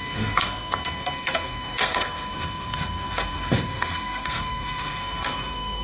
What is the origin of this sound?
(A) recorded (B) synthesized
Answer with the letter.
B